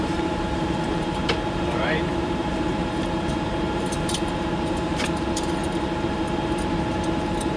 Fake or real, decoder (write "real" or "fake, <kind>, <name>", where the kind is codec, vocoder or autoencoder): fake, vocoder, BigVGAN v2